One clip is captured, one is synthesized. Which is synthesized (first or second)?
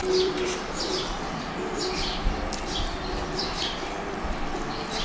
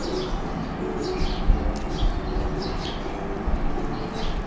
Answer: first